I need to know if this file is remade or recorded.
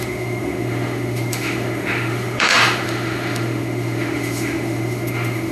remade